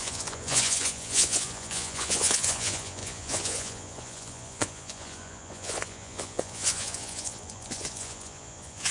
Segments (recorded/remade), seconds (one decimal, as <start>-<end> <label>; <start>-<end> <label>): 0.0-8.9 remade